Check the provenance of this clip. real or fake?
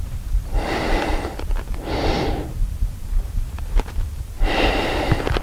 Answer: fake